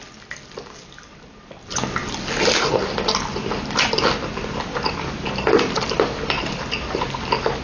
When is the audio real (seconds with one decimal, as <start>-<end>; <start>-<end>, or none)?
0.0-7.6